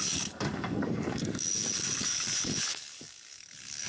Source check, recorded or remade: remade